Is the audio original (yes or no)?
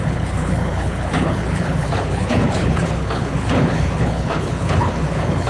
no